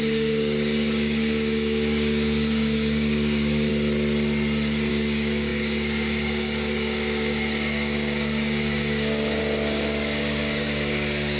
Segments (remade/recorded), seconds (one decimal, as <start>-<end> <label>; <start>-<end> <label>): 0.0-3.7 remade; 3.7-4.9 recorded; 4.9-11.4 remade